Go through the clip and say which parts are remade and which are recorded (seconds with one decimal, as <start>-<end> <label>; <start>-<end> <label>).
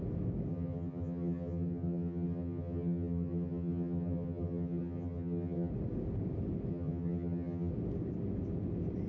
0.0-0.5 recorded; 0.5-5.7 remade; 5.7-6.7 recorded; 6.7-7.7 remade; 7.7-9.1 recorded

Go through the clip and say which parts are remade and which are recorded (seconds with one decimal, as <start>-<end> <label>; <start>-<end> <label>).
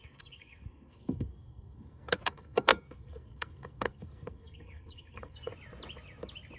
0.0-5.5 remade; 5.5-6.6 recorded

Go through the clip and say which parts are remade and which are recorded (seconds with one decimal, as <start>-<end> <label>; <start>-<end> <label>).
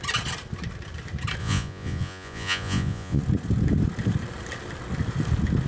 0.0-1.4 recorded; 1.4-3.2 remade; 3.2-5.7 recorded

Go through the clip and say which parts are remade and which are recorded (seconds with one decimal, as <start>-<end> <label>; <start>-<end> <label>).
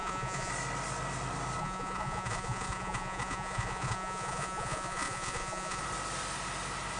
0.0-0.5 remade; 0.5-1.6 recorded; 1.6-5.8 remade; 5.8-7.0 recorded